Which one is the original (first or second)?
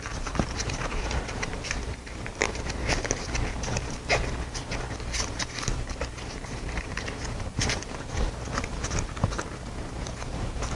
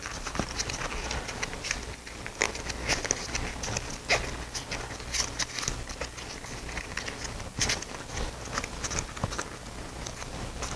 second